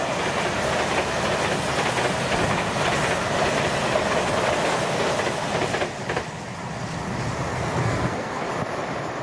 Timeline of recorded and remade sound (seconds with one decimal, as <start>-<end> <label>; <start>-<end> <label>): 0.0-7.5 recorded; 7.5-8.5 remade; 8.5-9.2 recorded